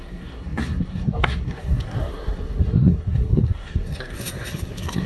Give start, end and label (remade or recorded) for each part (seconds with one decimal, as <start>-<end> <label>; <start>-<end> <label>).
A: 0.0-5.1 remade